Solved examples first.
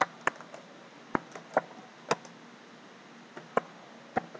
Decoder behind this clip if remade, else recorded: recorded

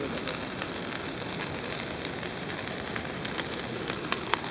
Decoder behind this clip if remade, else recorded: recorded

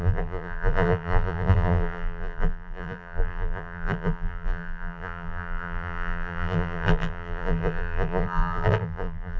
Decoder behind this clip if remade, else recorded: remade, vocoder, BigVGAN v2